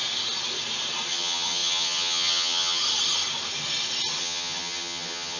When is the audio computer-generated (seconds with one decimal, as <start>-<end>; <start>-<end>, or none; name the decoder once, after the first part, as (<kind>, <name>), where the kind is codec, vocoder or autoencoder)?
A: 1.1-2.8 (vocoder, HiFi-GAN); 4.2-5.4